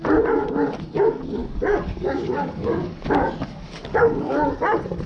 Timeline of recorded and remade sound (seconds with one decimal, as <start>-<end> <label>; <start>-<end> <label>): 0.0-1.4 recorded; 1.4-4.3 remade; 4.3-5.1 recorded

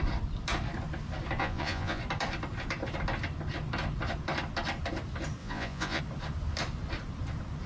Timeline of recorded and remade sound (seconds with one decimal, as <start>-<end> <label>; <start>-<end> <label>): 0.0-1.4 recorded; 1.4-2.0 remade; 2.0-5.4 recorded; 5.4-6.0 remade; 6.0-7.7 recorded

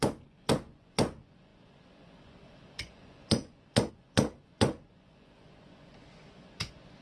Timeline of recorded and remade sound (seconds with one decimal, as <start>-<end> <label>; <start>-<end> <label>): 0.0-7.0 remade

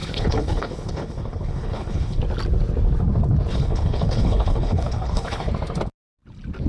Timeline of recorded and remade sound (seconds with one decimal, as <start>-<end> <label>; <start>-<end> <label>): 0.0-2.2 remade; 2.2-3.5 recorded; 3.5-5.5 remade; 5.5-6.7 recorded

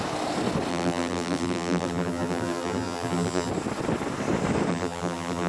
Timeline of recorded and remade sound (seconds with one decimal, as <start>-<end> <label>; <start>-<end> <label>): 0.0-0.7 recorded; 0.7-3.5 remade; 3.5-4.7 recorded; 4.7-5.5 remade

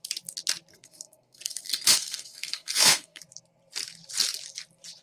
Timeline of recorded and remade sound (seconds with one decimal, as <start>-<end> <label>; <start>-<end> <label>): 0.0-0.7 recorded; 0.7-3.2 remade; 3.2-5.0 recorded

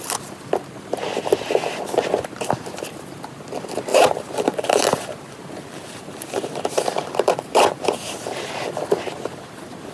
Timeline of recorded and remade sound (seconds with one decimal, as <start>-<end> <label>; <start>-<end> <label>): 0.0-3.9 recorded; 3.9-8.5 remade; 8.5-9.9 recorded

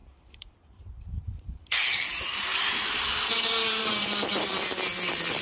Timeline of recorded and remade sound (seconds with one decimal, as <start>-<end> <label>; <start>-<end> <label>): 0.0-4.5 remade; 4.5-5.4 recorded